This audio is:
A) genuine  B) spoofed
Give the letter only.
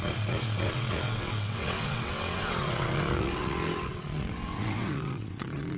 B